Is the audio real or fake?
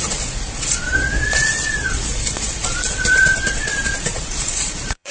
fake